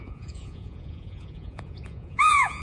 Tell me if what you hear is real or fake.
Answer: fake